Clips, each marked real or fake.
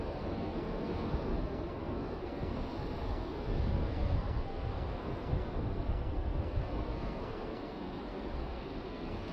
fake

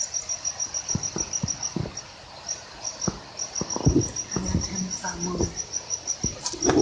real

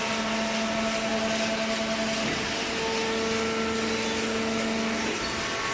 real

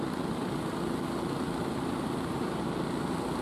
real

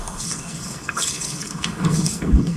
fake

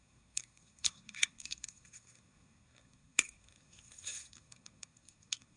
fake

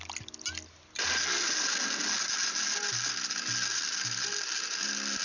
real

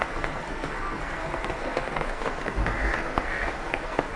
fake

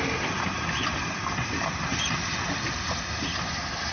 real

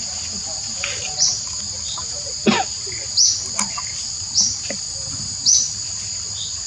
real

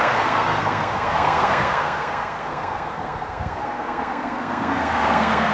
fake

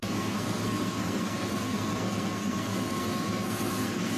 fake